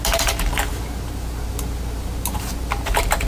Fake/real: real